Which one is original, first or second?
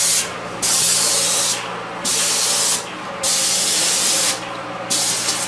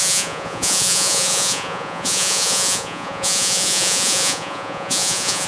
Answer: first